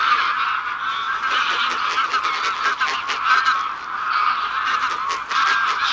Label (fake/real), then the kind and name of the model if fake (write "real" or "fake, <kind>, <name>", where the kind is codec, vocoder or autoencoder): real